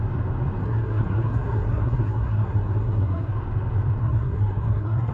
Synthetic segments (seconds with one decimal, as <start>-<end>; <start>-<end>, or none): 0.6-3.3; 4.0-5.1